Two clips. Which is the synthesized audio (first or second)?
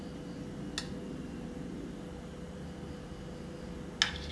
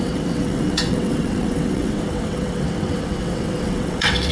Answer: second